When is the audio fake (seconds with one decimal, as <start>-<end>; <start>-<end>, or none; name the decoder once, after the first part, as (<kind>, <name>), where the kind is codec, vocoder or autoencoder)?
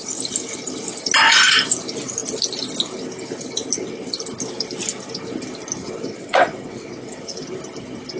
5.8-7.5 (vocoder, WaveNeXt)